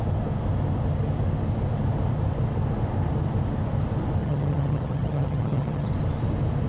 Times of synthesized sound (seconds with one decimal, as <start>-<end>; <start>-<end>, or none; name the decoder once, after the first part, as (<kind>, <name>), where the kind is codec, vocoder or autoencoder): 4.2-5.9 (vocoder, HiFi-GAN)